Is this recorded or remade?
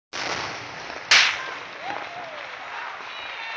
recorded